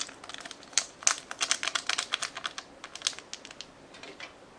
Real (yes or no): yes